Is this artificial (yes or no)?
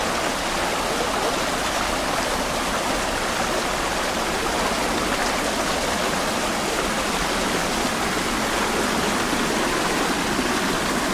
no